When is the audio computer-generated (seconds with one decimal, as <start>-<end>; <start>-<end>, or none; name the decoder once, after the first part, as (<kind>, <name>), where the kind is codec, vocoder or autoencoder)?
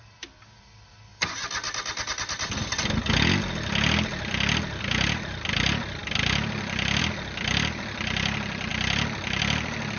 0.0-1.1 (vocoder, BigVGAN v2); 4.8-10.0